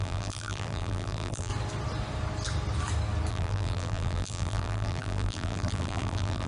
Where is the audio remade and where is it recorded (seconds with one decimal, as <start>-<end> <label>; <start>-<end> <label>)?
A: 0.0-1.5 remade; 1.5-3.3 recorded; 3.3-6.5 remade